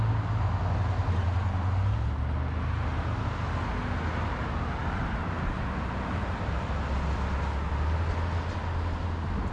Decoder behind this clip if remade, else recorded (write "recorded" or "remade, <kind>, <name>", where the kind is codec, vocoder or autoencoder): recorded